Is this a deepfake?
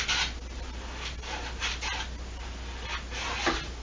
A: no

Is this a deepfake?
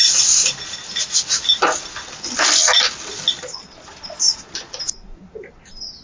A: no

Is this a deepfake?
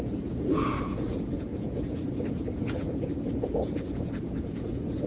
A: yes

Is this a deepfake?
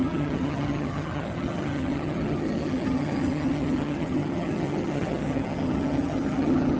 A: yes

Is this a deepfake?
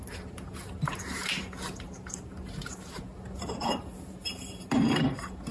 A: no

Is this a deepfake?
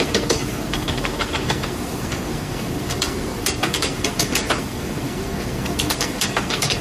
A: yes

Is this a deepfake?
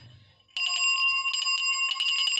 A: no